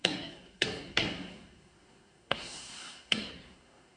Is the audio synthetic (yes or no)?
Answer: yes